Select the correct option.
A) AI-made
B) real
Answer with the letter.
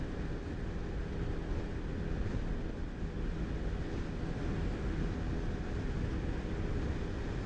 B